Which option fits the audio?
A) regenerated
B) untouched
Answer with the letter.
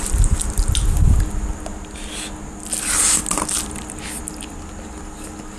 B